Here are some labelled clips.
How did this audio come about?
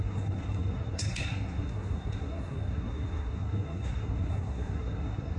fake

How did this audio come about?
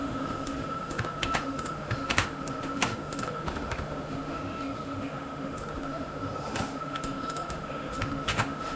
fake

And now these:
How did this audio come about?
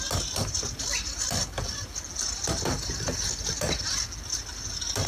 real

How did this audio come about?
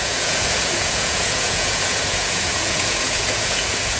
fake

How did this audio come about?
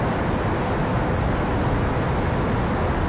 real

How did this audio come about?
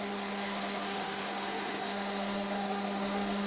fake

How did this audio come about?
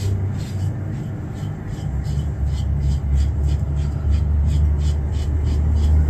real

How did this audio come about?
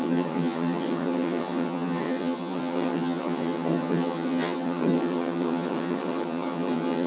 fake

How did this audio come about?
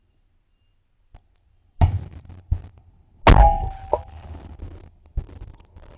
real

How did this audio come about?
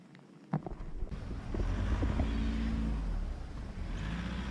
real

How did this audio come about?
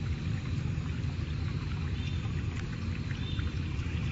real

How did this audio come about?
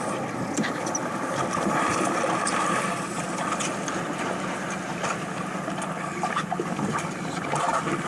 real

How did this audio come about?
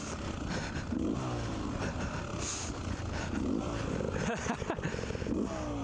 real